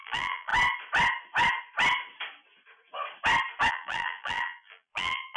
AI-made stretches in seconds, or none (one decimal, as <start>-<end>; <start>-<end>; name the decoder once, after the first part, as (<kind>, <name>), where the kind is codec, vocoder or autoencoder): 0.0-0.5 (vocoder, BigVGAN v2); 3.7-5.4